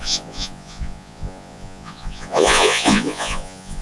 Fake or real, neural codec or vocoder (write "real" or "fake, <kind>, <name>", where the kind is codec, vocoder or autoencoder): fake, vocoder, Vocos